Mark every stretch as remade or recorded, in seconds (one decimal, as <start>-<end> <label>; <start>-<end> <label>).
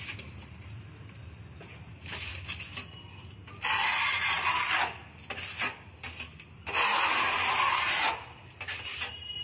0.0-2.3 remade; 2.3-7.2 recorded; 7.2-9.4 remade